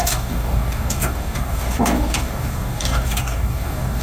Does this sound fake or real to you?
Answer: fake